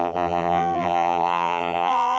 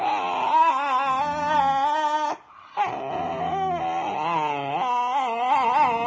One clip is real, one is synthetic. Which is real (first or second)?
second